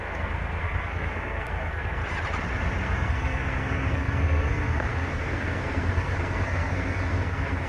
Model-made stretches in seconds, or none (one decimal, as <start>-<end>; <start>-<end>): 0.0-2.0; 2.8-7.7